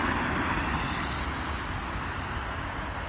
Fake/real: real